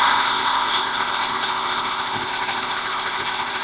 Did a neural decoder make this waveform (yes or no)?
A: yes